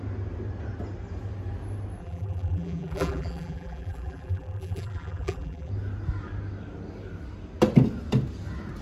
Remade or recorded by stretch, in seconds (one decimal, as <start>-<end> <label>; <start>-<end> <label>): 0.0-2.0 recorded; 2.0-5.7 remade; 5.7-8.8 recorded

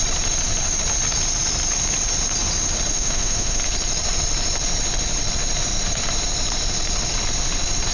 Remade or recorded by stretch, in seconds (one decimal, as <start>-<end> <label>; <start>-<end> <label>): 0.0-2.9 recorded; 2.9-3.6 remade; 3.6-7.9 recorded

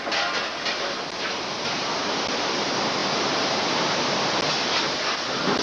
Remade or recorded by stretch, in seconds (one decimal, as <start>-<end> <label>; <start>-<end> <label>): 0.0-5.6 recorded